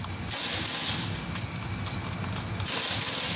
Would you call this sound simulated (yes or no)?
no